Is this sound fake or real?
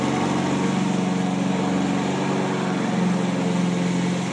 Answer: real